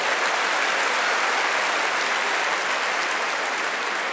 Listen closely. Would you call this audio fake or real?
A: real